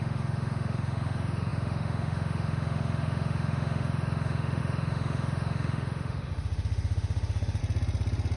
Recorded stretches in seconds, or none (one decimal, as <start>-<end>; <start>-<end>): 7.6-8.4